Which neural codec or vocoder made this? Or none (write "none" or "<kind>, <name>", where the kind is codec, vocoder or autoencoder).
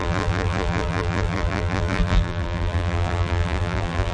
vocoder, BigVGAN v2